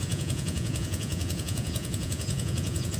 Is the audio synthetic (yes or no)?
yes